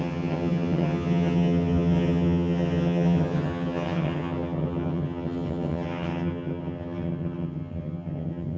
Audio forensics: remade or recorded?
remade